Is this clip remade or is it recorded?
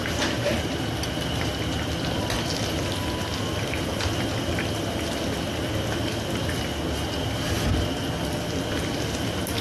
recorded